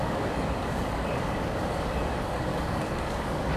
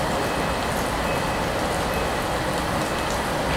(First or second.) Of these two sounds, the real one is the second